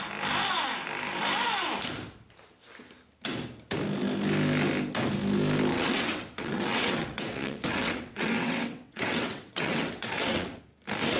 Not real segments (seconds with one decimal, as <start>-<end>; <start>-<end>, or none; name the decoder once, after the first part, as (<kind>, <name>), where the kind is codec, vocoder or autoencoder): 5.7-10.6 (vocoder, WaveNeXt)